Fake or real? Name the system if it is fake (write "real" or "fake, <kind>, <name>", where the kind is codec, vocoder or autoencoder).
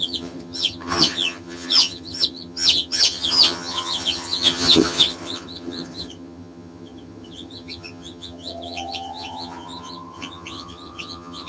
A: fake, vocoder, HiFi-GAN